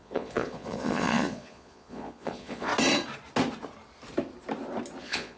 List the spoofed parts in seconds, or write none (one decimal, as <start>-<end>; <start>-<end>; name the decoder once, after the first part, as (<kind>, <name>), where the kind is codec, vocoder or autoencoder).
0.0-2.7 (vocoder, Vocos); 5.0-5.4